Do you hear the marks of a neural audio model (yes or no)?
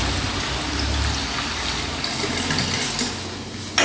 no